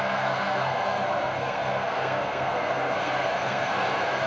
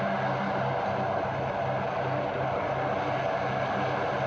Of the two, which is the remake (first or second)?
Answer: first